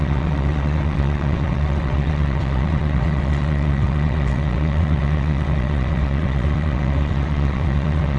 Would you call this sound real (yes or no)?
no